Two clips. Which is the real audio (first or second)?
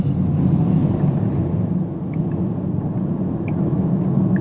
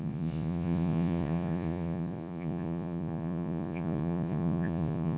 first